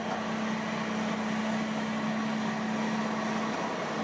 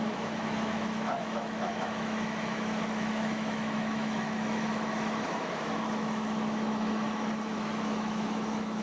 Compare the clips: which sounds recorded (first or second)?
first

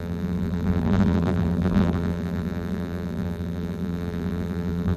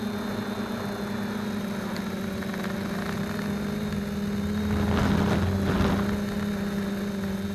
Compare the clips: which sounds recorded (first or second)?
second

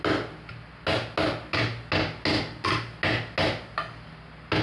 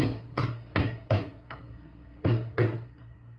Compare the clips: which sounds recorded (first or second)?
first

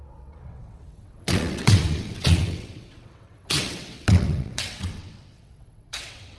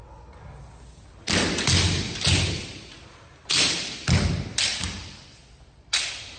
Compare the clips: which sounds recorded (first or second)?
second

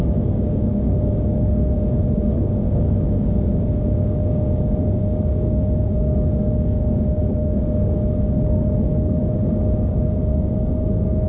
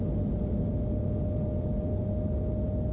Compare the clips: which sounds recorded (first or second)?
second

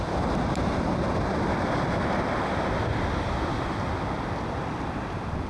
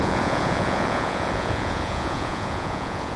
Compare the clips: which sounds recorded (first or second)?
first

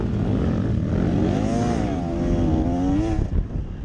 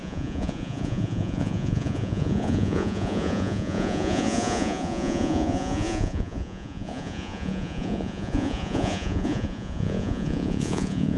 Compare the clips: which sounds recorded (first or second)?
first